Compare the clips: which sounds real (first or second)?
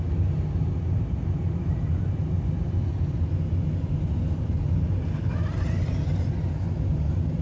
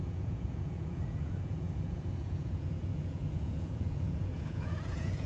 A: first